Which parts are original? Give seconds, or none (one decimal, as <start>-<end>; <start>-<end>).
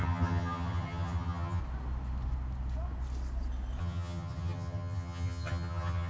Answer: 1.6-3.8